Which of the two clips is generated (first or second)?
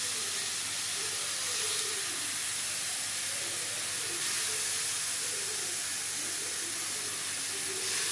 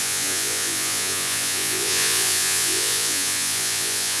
second